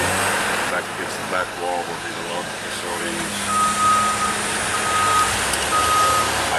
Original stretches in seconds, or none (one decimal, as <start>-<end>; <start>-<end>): 0.0-1.2; 3.0-6.6